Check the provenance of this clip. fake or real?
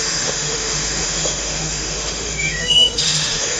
fake